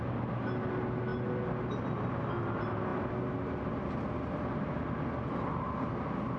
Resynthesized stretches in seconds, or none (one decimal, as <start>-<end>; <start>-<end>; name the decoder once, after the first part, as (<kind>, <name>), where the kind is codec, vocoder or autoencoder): none